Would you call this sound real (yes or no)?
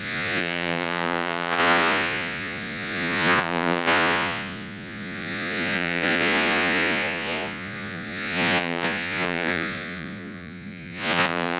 no